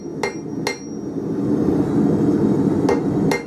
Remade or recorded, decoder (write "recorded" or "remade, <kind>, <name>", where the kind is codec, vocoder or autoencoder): recorded